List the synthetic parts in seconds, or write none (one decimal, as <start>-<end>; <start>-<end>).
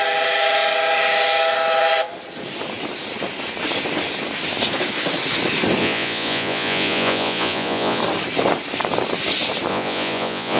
5.8-8.0; 9.7-10.6